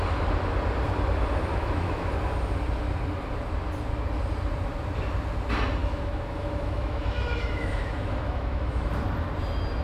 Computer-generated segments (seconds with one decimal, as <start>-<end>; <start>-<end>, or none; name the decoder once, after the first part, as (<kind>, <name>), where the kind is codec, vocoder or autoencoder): 1.5-2.1 (autoencoder, DAC-VAE); 5.8-8.9